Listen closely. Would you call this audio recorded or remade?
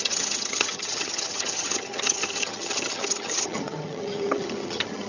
remade